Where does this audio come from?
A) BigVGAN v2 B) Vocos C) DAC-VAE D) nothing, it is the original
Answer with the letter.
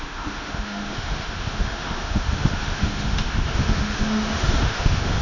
C